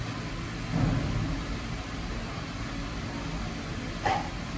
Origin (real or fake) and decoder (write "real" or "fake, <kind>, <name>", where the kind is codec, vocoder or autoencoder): real